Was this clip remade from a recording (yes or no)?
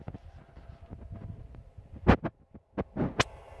no